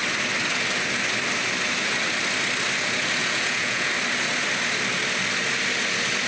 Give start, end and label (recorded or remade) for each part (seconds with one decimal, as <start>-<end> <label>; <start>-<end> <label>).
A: 0.0-3.2 recorded; 3.2-3.9 remade; 3.9-6.3 recorded